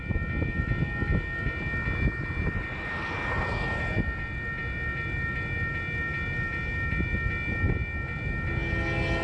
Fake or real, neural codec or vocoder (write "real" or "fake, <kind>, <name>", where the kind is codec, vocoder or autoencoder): real